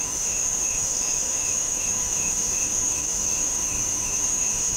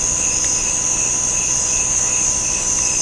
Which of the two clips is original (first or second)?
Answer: second